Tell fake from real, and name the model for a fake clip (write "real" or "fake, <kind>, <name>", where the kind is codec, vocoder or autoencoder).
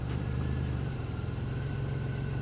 fake, vocoder, BigVGAN v2